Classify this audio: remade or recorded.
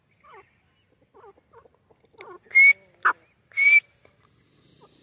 recorded